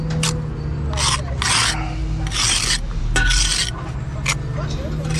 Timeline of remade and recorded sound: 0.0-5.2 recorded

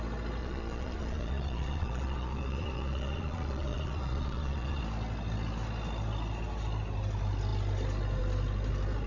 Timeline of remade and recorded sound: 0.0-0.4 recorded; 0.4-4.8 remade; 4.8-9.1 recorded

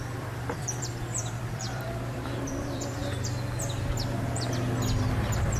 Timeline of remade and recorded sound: 0.0-3.0 remade; 3.0-5.6 recorded

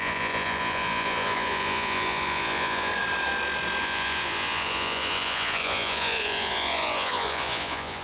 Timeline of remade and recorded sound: 0.0-2.9 remade; 2.9-3.8 recorded; 3.8-8.0 remade

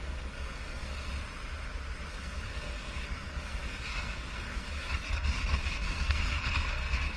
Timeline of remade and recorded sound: 0.0-1.1 remade; 1.1-2.1 recorded; 2.1-7.2 remade

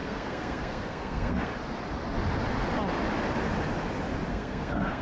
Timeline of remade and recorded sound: 0.0-1.5 remade; 1.5-4.3 recorded; 4.3-5.0 remade